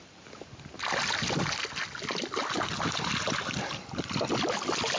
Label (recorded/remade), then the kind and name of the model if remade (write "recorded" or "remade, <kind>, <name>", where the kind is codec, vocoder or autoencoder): recorded